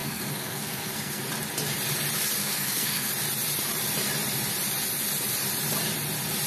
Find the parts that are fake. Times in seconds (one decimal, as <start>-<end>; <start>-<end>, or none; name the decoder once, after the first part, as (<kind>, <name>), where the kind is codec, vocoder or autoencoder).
0.0-1.2 (codec, SNAC); 2.4-3.1